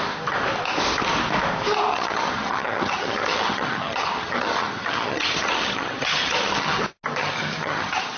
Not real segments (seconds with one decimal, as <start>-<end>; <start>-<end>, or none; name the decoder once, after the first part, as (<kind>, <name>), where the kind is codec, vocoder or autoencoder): 1.9-6.8 (vocoder, HiFi-GAN); 7.2-8.2